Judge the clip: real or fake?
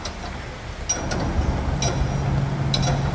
real